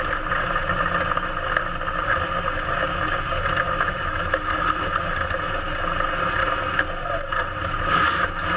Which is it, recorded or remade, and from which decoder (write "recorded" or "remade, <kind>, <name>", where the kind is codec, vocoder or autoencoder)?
recorded